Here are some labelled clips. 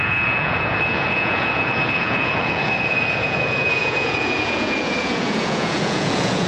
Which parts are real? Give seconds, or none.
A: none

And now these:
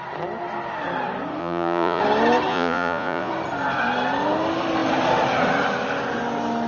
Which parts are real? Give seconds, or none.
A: 0.0-1.4; 2.0-2.5; 3.3-6.7